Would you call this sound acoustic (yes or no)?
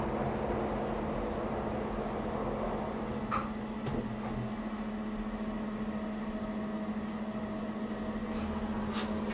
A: yes